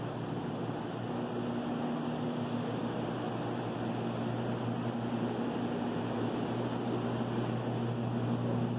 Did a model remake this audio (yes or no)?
no